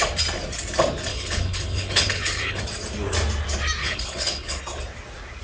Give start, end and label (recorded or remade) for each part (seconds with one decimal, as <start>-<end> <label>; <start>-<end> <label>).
0.0-1.1 recorded; 1.1-2.6 remade; 2.6-3.8 recorded; 3.8-4.6 remade; 4.6-5.4 recorded